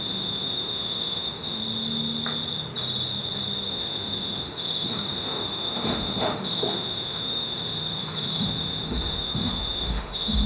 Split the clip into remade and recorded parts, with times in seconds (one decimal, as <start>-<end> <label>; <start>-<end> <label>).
0.0-1.6 remade; 1.6-3.7 recorded; 3.7-10.5 remade